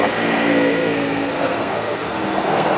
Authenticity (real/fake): fake